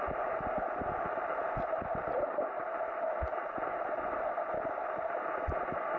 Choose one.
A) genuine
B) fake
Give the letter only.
A